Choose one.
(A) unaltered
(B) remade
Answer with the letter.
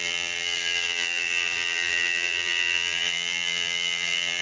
B